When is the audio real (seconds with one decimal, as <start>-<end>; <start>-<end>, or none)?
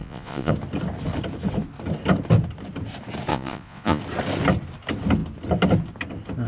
0.5-3.3; 4.0-6.5